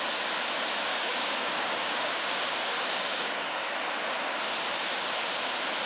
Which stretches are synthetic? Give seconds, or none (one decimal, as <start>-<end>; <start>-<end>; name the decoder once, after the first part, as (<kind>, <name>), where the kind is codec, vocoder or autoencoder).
0.9-3.7 (codec, DAC)